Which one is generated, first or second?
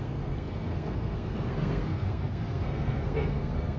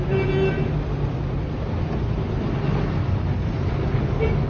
first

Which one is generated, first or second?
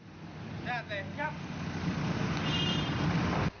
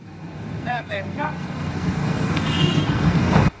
second